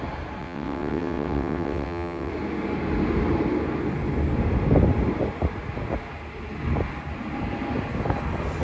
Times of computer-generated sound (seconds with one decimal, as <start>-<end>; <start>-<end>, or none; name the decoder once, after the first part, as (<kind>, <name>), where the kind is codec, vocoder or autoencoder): 0.4-2.3 (vocoder, WaveNeXt)